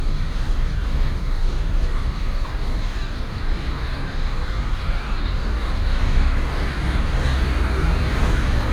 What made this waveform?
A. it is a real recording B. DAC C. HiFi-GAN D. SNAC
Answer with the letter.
B